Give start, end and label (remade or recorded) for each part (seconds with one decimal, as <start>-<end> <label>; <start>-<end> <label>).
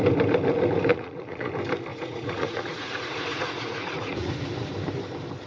0.0-0.9 recorded; 0.9-1.5 remade; 1.5-1.9 recorded; 1.9-4.3 remade; 4.3-5.5 recorded